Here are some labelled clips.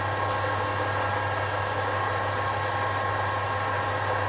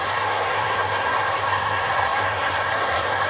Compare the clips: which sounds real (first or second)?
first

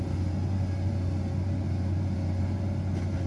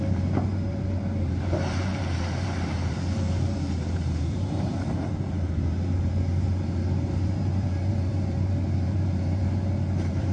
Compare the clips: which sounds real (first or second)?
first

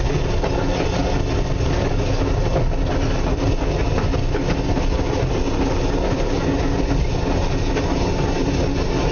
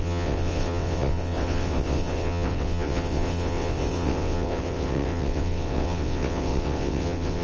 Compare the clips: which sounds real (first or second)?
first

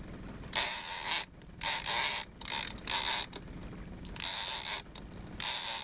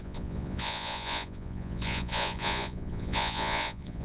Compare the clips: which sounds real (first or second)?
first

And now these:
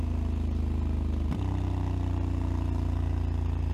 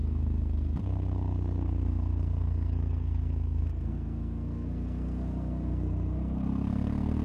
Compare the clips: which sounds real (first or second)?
first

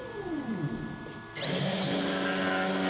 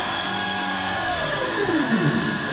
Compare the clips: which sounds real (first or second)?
first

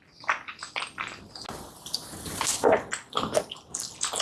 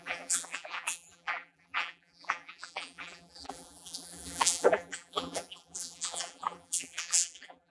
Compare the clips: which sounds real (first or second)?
first